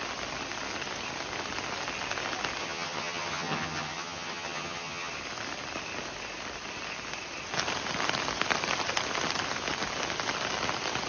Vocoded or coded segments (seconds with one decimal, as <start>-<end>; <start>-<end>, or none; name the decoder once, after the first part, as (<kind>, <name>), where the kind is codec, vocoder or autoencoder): 2.6-5.1 (vocoder, HiFi-GAN)